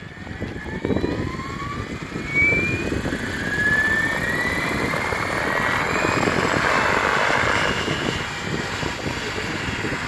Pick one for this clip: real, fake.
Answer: fake